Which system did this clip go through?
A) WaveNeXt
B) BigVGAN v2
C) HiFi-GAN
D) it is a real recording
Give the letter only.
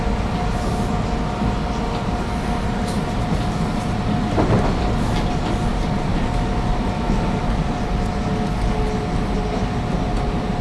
D